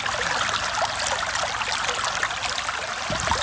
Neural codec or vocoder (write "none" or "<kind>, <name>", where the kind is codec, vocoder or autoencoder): none